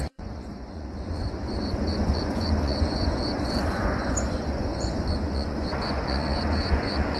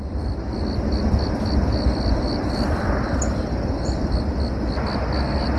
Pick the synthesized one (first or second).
first